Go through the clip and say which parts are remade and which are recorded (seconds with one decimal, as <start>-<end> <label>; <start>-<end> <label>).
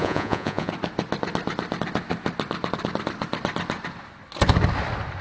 0.0-0.7 remade; 0.7-5.2 recorded